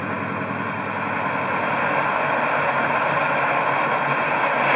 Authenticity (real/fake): real